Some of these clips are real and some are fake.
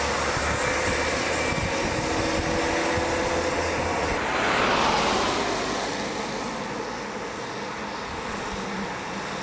real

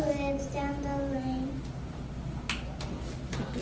real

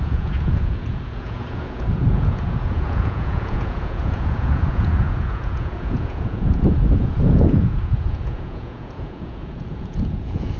fake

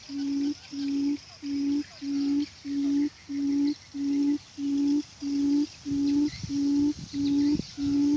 real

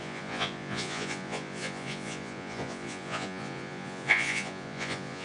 fake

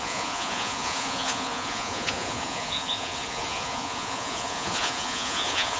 fake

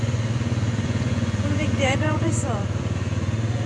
fake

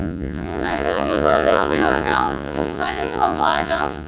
fake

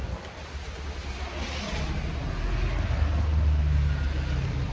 real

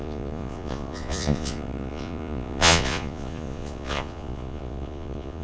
fake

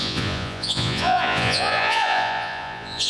fake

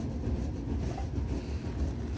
real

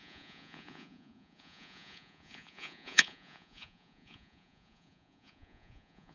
fake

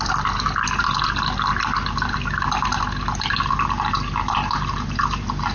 real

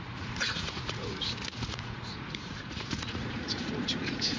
fake